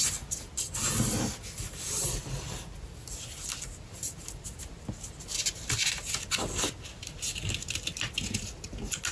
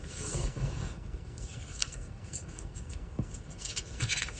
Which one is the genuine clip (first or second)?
first